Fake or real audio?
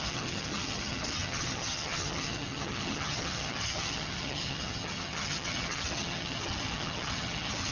fake